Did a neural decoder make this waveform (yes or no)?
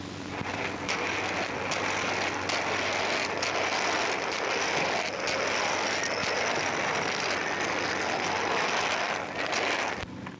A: no